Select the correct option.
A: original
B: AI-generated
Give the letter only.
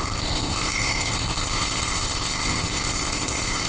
B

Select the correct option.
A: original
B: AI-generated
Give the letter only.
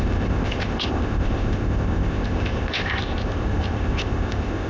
B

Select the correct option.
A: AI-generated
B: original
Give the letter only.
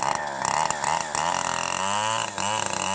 B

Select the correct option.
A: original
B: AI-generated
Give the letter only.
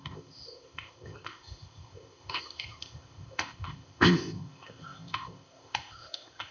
B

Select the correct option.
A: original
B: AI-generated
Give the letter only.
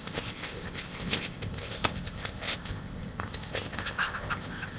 B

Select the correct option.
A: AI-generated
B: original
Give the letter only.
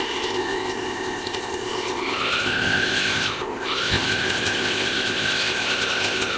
A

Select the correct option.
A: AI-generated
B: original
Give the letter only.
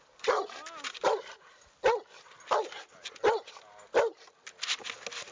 B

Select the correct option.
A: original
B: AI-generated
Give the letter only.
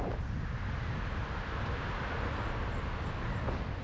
A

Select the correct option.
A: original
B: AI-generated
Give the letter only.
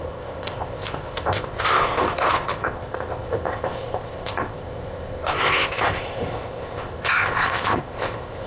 B